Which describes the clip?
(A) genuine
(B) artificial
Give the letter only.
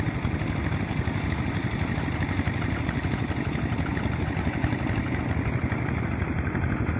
A